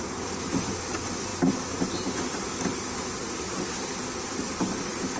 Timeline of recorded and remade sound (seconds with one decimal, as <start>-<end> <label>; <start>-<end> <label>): 0.0-1.3 recorded; 1.3-1.9 remade; 1.9-5.2 recorded